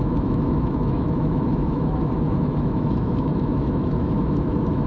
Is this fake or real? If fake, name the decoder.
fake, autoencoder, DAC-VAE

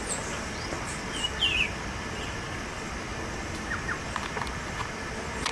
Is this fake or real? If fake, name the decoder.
real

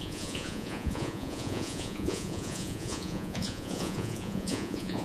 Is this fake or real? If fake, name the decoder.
fake, vocoder, Vocos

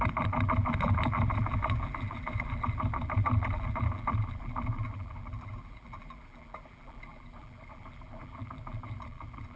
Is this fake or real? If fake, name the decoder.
fake, vocoder, BigVGAN v2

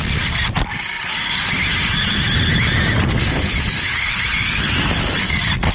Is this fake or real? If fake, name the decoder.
real